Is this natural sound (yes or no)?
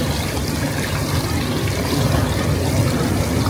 yes